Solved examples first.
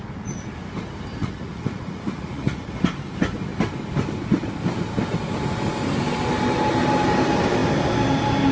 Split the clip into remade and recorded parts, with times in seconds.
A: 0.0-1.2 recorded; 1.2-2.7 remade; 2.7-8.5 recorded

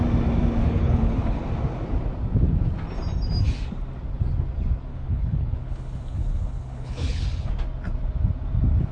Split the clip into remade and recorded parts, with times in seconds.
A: 0.0-0.6 recorded; 0.6-1.4 remade; 1.4-4.9 recorded; 4.9-7.5 remade; 7.5-8.9 recorded